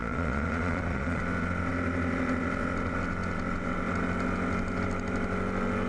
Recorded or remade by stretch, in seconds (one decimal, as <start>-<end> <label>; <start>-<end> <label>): 0.0-1.2 remade; 1.2-5.9 recorded